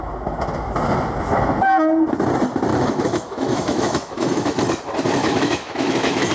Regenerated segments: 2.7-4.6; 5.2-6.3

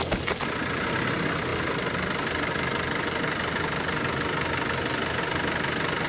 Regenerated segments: none

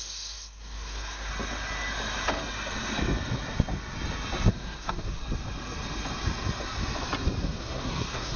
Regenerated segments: 0.0-1.3; 4.5-5.2; 7.4-8.4

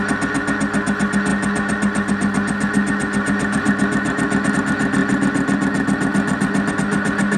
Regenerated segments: none